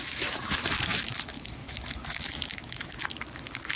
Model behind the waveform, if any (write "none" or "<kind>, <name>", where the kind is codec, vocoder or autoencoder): autoencoder, DAC-VAE